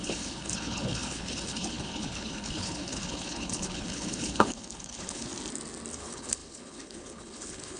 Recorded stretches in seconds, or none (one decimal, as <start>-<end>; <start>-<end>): 5.3-5.9